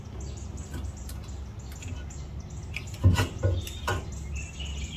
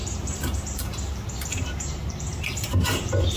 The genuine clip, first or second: first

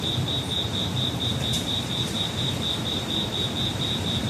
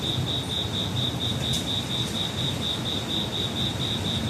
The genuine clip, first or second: second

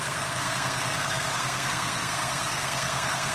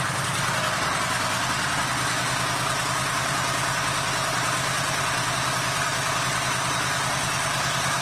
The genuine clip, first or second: second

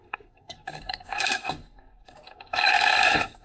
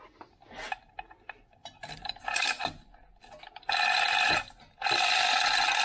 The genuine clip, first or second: second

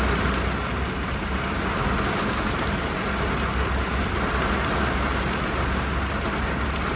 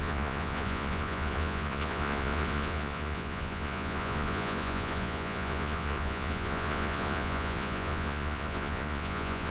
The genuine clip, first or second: first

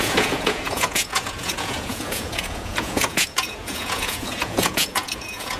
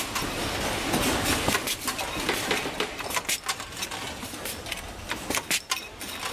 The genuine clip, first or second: second